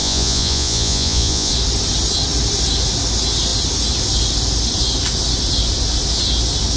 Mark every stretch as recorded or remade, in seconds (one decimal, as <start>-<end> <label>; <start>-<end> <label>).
0.0-1.5 remade; 1.5-6.8 recorded